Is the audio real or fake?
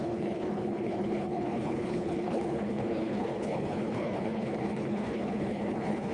fake